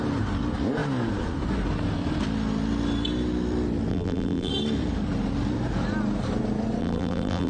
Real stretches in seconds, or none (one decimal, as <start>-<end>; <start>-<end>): 0.0-3.9; 4.5-6.8